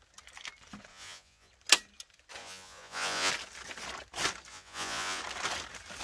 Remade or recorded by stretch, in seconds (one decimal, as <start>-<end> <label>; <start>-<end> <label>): 0.0-0.9 recorded; 0.9-1.5 remade; 1.5-2.4 recorded; 2.4-3.3 remade; 3.3-4.5 recorded; 4.5-5.2 remade; 5.2-6.0 recorded